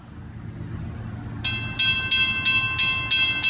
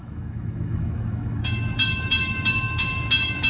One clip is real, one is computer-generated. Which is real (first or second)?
first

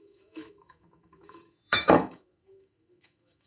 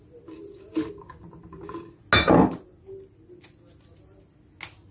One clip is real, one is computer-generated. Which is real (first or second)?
second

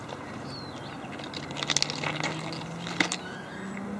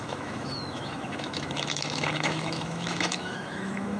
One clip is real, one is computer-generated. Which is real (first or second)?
first